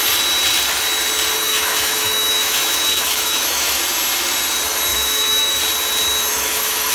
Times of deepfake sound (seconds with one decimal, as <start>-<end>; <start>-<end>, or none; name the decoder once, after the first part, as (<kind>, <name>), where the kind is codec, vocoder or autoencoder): 1.4-3.8 (autoencoder, DAC-VAE); 4.9-5.6; 6.3-6.9